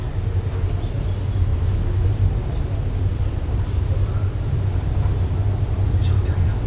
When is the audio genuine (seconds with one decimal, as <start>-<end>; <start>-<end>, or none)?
0.0-6.7